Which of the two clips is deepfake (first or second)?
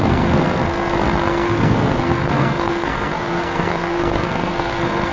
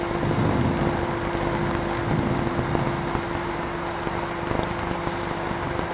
first